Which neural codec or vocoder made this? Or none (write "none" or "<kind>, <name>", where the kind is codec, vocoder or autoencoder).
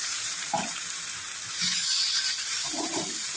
vocoder, BigVGAN v2